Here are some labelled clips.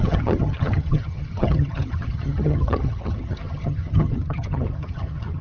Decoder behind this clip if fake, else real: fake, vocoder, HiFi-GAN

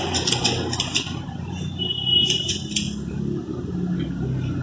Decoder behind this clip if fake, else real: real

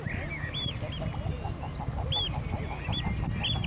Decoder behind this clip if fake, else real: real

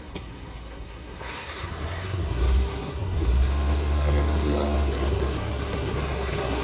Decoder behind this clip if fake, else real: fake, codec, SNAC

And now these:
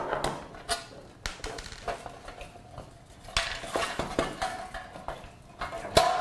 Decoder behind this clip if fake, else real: real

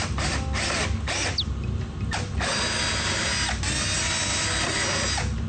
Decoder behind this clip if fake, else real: real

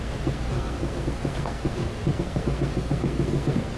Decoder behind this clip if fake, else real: fake, codec, SNAC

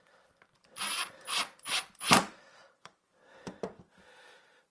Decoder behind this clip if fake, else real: fake, vocoder, BigVGAN v2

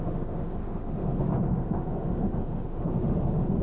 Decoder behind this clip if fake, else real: fake, autoencoder, DAC-VAE